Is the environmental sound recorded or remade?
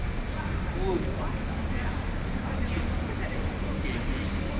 recorded